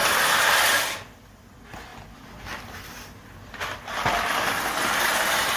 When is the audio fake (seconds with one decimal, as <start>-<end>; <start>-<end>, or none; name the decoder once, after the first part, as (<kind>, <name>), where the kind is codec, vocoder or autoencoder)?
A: none

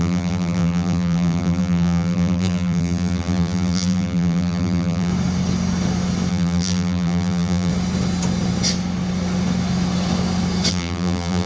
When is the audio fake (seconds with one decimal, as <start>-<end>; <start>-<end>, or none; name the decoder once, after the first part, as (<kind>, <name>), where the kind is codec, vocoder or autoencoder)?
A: 0.0-5.1 (vocoder, BigVGAN v2); 6.3-7.7; 10.7-11.5